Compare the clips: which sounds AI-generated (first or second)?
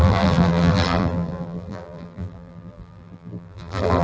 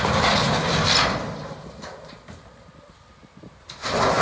first